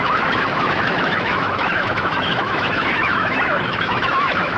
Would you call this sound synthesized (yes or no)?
yes